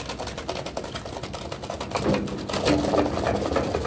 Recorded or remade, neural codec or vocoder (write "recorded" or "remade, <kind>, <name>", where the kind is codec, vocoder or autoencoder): recorded